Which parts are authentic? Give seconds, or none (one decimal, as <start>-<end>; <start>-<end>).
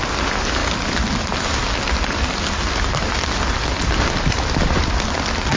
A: 0.0-5.6